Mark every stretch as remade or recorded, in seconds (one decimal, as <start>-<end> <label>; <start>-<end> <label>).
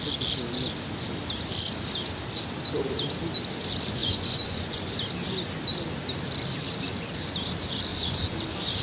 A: 0.0-4.0 recorded; 4.0-4.9 remade; 4.9-7.9 recorded; 7.9-8.4 remade; 8.4-8.8 recorded